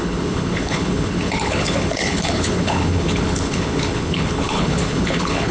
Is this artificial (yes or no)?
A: yes